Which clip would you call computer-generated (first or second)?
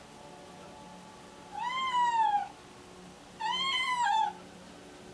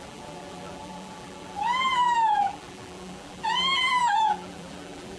second